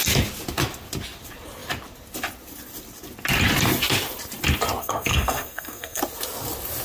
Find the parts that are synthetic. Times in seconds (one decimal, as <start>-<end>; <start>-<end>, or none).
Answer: 4.8-6.0